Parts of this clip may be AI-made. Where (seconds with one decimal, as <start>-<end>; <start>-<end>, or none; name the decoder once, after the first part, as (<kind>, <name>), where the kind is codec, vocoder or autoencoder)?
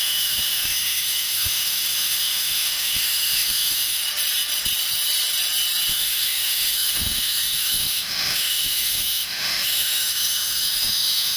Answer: 0.0-4.0 (autoencoder, DAC-VAE); 5.9-11.4